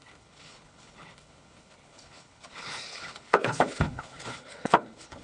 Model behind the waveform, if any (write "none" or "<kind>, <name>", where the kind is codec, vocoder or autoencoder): codec, HILCodec